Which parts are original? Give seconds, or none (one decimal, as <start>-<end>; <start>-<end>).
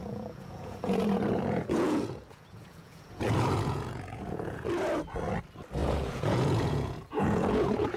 4.7-5.8